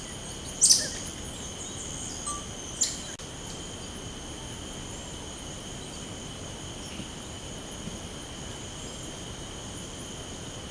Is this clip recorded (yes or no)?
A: yes